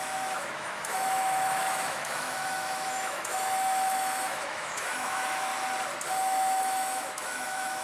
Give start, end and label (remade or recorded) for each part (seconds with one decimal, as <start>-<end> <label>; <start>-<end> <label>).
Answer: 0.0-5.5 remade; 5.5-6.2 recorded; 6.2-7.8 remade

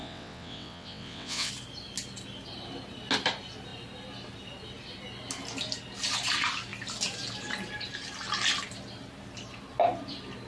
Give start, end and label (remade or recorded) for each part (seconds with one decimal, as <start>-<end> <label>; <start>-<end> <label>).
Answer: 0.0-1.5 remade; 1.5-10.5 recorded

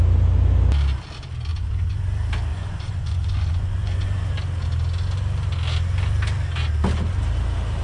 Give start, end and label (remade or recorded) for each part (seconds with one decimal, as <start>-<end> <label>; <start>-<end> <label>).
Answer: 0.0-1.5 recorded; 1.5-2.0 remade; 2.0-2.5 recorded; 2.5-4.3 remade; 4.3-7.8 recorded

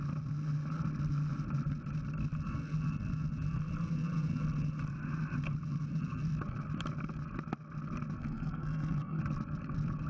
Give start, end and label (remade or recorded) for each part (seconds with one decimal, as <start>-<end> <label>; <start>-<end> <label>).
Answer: 0.0-8.2 recorded; 8.2-9.2 remade; 9.2-10.1 recorded